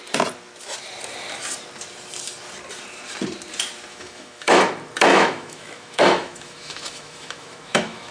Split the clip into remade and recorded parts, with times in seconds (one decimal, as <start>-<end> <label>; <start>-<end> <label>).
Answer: 0.0-3.9 recorded; 3.9-4.6 remade; 4.6-5.1 recorded; 5.1-8.1 remade